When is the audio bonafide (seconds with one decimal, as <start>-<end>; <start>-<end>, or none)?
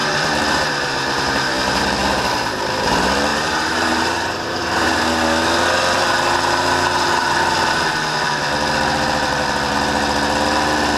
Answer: 1.8-3.3; 5.0-11.0